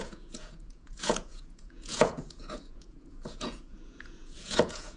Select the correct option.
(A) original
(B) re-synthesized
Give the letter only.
B